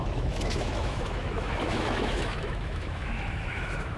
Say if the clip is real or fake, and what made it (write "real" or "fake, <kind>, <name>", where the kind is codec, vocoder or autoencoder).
fake, autoencoder, DAC-VAE